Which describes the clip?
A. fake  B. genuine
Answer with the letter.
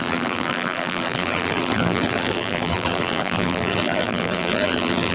A